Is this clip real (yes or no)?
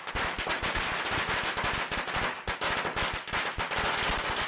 yes